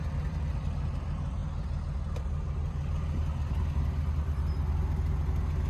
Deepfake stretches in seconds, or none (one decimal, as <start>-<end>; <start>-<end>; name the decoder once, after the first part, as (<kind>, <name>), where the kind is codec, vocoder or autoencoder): none